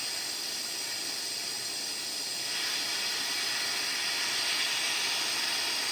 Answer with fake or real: real